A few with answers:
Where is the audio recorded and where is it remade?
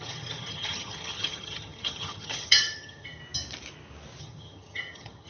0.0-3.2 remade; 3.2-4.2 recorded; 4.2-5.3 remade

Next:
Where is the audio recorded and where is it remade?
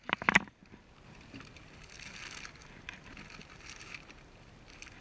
0.0-5.0 recorded